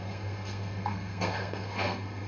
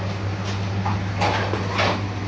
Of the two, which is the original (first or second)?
second